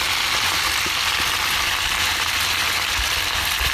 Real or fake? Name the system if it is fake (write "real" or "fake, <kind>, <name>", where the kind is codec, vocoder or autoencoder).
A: real